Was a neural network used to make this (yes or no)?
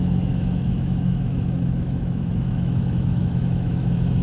yes